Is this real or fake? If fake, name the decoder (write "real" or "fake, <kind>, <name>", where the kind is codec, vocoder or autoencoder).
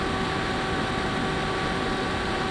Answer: real